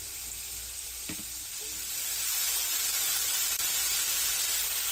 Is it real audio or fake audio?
real